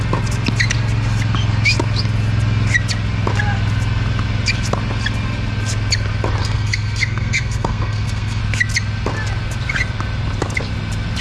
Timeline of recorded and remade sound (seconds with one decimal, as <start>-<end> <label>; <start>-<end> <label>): 0.0-6.4 recorded; 6.4-8.4 remade; 8.4-11.2 recorded